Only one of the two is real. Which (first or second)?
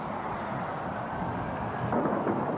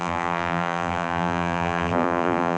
first